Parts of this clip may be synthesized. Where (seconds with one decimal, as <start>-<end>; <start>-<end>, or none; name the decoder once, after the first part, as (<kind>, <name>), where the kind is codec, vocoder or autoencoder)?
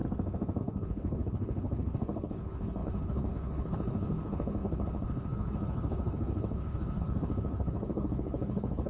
0.6-8.9 (codec, HILCodec)